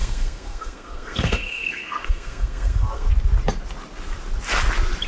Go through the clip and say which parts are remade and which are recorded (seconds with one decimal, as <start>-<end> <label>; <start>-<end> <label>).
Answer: 0.0-3.1 remade; 3.1-5.1 recorded